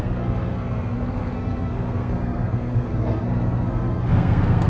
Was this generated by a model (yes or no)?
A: yes